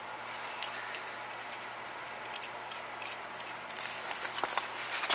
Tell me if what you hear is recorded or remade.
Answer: recorded